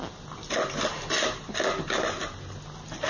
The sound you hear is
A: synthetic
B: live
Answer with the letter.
B